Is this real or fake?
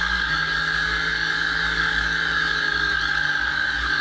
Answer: fake